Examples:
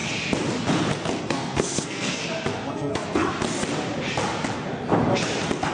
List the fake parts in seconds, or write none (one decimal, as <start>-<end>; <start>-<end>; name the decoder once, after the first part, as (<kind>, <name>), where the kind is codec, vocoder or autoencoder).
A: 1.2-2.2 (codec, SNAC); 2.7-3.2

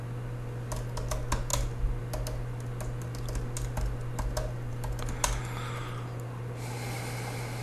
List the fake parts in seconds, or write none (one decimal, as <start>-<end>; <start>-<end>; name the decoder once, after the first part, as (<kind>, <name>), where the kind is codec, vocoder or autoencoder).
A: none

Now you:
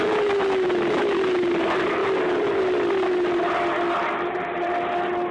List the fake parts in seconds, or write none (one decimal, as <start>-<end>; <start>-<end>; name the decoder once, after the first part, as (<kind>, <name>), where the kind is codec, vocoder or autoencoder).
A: none

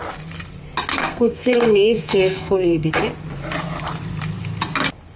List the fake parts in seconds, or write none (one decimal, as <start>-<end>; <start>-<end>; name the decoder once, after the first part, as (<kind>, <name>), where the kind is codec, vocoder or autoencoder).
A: 0.9-3.0 (codec, SNAC)

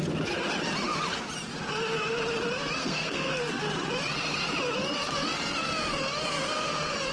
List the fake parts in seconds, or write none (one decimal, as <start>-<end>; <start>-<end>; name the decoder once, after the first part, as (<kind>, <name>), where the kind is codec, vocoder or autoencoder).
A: 2.8-3.5 (codec, SNAC)

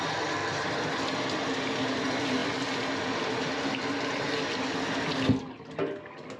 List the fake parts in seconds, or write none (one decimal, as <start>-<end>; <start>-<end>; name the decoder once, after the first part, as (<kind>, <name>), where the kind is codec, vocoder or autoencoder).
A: none

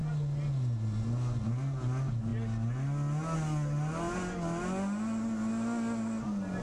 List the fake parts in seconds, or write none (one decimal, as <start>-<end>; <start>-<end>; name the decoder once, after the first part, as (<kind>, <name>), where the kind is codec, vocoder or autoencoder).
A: none

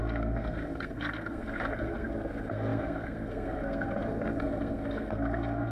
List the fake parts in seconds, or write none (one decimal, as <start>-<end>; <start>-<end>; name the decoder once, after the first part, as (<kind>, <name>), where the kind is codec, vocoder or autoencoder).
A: 0.0-5.7 (codec, SNAC)